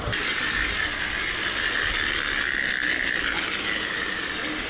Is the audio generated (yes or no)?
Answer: no